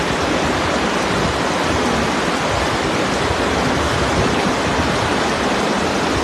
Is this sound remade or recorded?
recorded